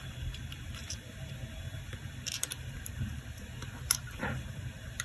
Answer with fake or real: fake